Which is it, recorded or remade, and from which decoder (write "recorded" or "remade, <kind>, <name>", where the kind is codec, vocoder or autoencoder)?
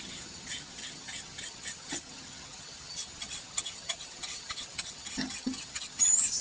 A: remade, vocoder, HiFi-GAN